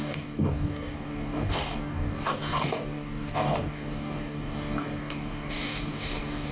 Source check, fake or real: fake